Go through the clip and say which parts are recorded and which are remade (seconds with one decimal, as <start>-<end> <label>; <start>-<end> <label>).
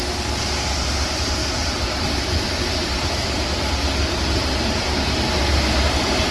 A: 0.0-1.4 recorded; 1.4-5.2 remade; 5.2-6.3 recorded